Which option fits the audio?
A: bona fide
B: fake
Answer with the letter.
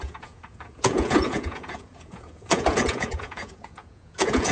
B